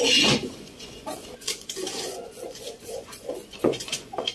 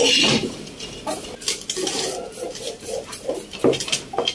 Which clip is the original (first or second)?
second